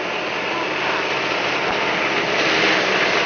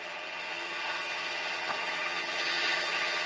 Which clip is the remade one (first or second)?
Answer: second